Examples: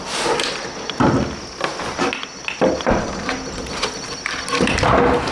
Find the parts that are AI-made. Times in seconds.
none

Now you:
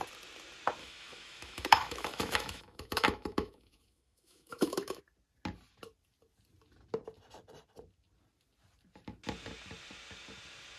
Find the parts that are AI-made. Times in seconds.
0.8-5.0 (autoencoder, DAC-VAE)

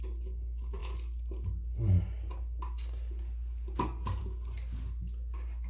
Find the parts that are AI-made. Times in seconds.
none

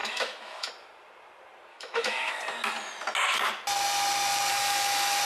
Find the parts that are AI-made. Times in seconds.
0.0-0.7 (autoencoder, DAC-VAE); 1.7-2.4; 4.5-5.2

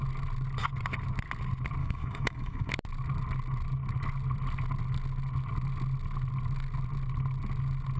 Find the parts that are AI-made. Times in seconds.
1.8-2.7 (autoencoder, DAC-VAE)

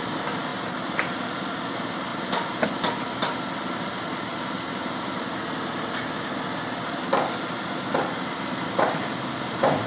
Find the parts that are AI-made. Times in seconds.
none